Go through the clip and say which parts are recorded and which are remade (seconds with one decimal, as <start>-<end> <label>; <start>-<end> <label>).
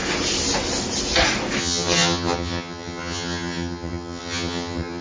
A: 0.0-1.6 recorded; 1.6-5.0 remade